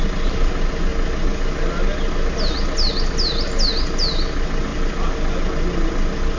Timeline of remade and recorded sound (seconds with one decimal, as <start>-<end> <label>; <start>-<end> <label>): 0.0-6.4 recorded